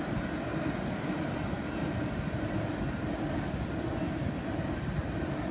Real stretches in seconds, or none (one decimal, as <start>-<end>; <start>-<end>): 0.0-5.5